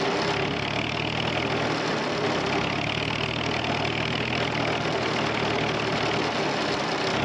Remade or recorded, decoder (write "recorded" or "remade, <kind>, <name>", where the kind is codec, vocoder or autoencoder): recorded